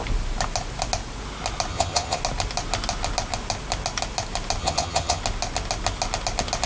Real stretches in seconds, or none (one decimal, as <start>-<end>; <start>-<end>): 0.0-1.7; 2.2-4.6; 5.2-6.7